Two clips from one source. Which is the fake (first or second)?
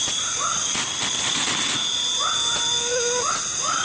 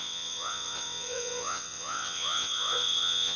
second